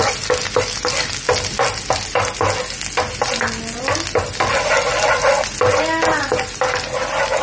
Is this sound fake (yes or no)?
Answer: no